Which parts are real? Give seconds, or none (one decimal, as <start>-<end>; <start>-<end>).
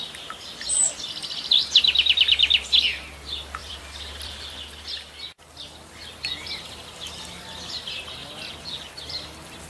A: 0.0-3.6; 4.5-9.7